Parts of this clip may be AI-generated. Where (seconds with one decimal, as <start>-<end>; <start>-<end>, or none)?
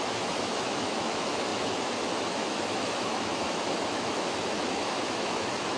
0.0-5.8